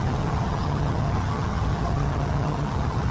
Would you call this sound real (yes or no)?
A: no